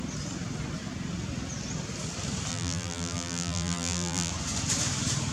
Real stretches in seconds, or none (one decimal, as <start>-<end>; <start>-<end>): 0.0-2.5; 4.3-5.3